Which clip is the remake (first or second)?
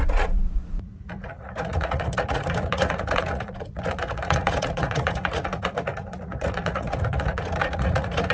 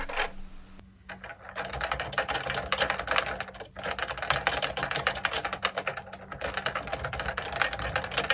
first